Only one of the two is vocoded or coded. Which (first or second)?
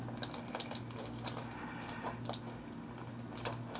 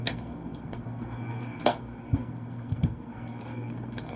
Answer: second